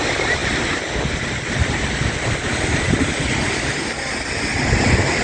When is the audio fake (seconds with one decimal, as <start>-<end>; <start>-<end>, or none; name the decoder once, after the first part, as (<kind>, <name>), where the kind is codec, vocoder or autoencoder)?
0.4-3.5 (vocoder, BigVGAN v2)